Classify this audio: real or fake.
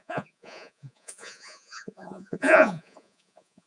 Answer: fake